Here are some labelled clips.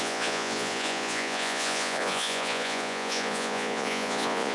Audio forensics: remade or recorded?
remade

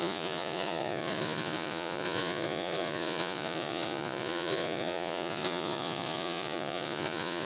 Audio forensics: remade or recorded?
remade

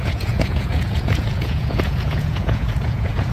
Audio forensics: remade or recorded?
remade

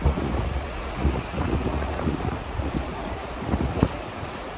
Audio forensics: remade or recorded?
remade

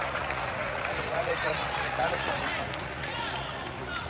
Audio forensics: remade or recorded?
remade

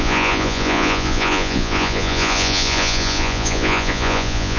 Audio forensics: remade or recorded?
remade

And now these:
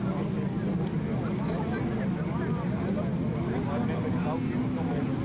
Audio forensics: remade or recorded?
recorded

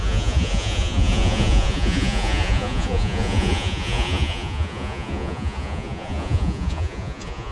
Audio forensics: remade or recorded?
remade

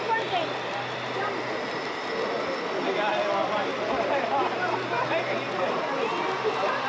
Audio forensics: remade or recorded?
recorded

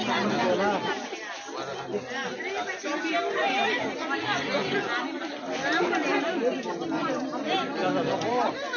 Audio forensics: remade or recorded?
recorded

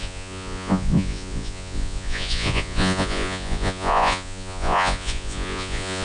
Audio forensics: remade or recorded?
remade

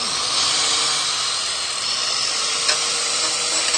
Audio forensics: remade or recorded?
recorded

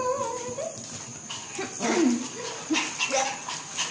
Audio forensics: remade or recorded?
recorded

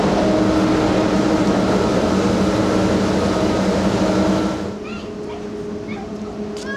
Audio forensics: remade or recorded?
recorded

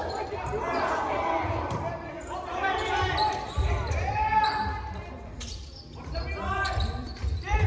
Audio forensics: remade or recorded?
recorded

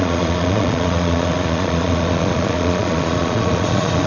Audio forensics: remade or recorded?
remade